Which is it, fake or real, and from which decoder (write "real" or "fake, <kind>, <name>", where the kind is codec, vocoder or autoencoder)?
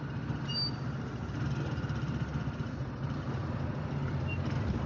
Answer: real